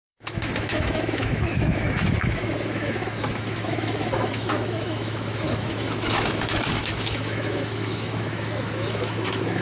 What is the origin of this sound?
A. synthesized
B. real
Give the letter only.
A